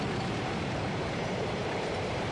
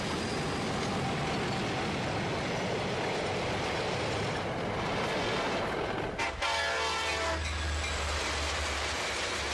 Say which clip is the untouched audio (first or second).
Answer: second